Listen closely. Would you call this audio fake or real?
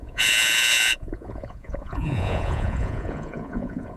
fake